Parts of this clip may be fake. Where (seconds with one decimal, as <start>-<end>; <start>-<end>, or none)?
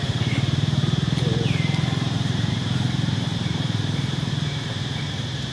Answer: 0.0-5.5